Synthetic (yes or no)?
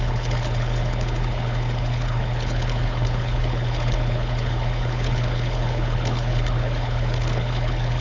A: yes